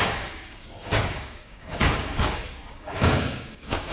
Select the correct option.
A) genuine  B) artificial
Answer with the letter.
B